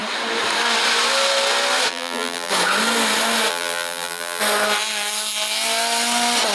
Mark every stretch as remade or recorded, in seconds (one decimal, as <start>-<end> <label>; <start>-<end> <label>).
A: 0.0-1.9 recorded; 1.9-2.5 remade; 2.5-3.5 recorded; 3.5-4.4 remade; 4.4-6.5 recorded